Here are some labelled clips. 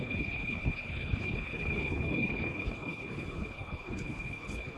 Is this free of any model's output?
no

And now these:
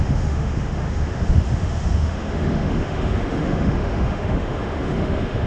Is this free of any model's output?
no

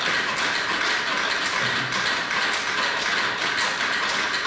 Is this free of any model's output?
yes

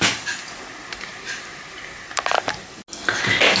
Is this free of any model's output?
yes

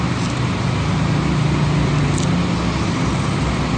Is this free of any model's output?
yes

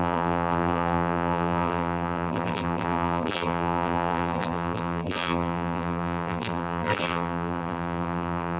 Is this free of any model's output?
no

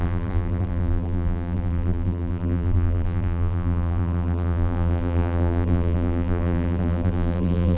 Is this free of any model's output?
no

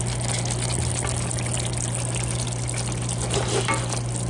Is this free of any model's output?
yes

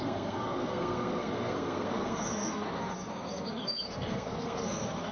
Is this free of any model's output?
no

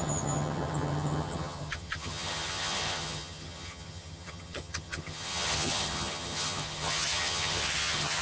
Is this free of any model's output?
no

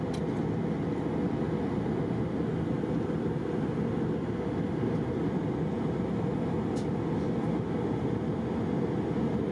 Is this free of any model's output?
yes